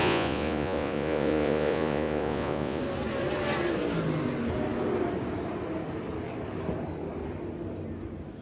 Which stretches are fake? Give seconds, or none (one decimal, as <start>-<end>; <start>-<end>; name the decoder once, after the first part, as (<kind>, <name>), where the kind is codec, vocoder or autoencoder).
0.0-2.8 (vocoder, Vocos)

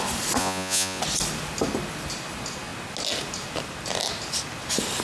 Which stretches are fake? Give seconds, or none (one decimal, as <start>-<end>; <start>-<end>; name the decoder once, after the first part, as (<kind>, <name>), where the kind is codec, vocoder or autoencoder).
0.4-1.0 (vocoder, Vocos)